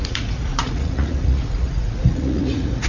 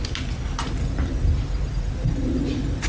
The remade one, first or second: first